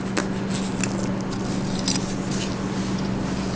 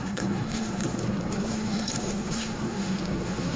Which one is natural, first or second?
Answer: first